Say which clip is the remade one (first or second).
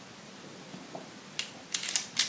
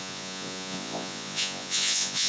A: second